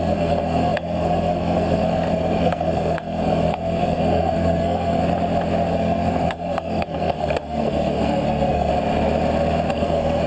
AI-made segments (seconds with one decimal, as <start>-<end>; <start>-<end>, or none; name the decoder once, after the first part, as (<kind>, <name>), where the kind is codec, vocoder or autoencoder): 0.0-5.0 (codec, SNAC); 5.7-8.7; 9.7-10.3